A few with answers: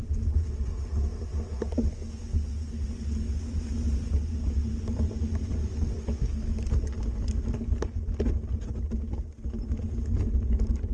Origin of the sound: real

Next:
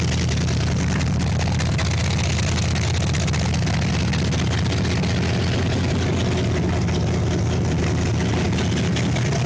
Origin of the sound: real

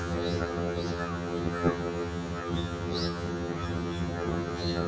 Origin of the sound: fake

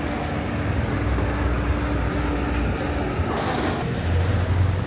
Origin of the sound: real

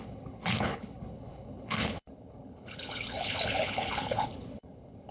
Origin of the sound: fake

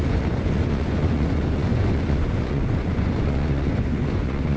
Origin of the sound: fake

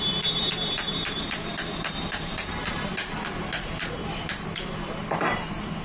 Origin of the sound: fake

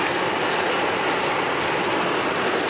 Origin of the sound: real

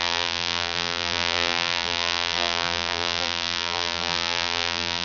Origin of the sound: fake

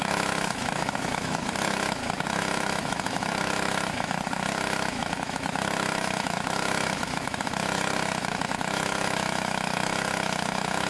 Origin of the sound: fake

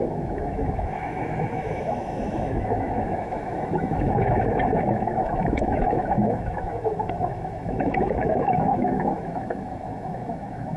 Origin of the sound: fake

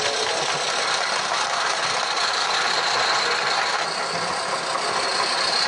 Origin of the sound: real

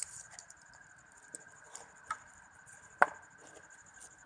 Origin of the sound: real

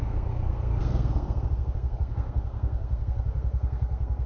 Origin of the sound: fake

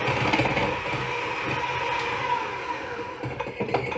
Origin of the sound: real